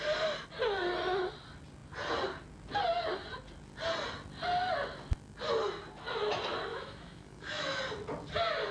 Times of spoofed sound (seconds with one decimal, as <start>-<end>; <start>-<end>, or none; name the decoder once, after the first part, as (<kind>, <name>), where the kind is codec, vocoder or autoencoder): 6.7-7.8 (autoencoder, DAC-VAE)